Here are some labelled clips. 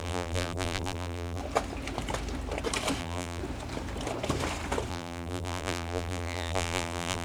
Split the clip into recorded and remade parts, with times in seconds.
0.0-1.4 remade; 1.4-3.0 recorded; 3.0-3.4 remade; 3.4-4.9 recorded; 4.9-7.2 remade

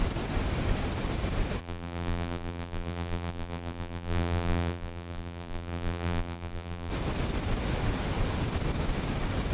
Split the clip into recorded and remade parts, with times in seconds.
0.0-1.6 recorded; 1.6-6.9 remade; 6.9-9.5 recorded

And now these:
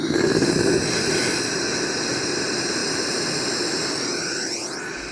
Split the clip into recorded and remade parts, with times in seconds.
0.0-4.4 recorded; 4.4-5.1 remade